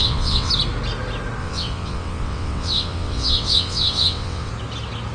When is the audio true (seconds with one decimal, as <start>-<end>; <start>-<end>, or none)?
0.5-1.4; 4.5-5.1